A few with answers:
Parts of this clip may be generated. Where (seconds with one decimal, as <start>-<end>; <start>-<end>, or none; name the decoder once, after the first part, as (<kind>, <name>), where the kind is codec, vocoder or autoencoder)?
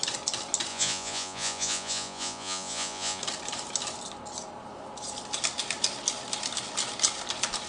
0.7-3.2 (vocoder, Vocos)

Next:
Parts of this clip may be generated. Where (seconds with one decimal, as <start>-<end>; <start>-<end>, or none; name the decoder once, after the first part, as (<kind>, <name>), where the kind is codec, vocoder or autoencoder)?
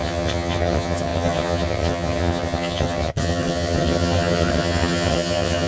0.0-5.7 (vocoder, HiFi-GAN)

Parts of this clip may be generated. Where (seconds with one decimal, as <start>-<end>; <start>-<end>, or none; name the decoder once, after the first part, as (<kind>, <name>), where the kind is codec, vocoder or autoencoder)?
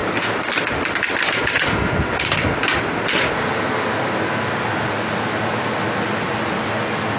0.0-0.7 (vocoder, BigVGAN v2)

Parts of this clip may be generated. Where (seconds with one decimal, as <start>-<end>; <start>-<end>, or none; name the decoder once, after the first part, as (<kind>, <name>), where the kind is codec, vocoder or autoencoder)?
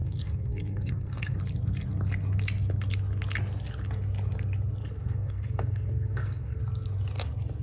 0.0-1.4 (codec, SNAC); 4.8-6.6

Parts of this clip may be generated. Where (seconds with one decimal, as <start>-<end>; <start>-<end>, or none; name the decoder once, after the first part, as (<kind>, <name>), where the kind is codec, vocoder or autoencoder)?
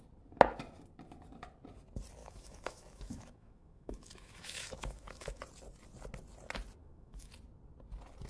2.2-5.4 (autoencoder, DAC-VAE); 6.8-7.3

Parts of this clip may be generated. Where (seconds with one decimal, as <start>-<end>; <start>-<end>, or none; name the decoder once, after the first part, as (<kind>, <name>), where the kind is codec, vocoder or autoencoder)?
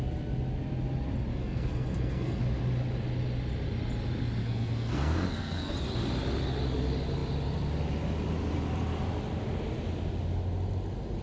1.3-2.4 (codec, SNAC); 4.4-5.7